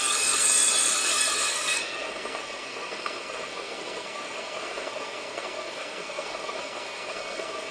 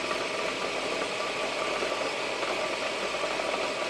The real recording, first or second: second